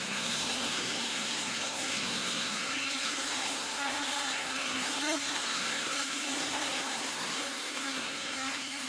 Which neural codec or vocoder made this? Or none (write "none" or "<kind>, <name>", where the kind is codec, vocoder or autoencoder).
codec, SNAC